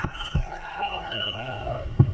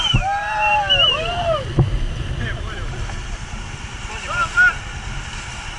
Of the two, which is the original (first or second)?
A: second